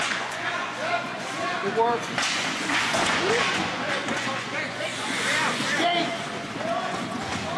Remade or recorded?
remade